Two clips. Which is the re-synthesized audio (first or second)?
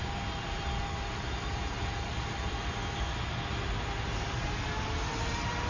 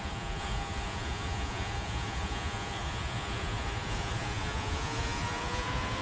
second